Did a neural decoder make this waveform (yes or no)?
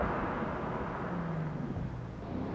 no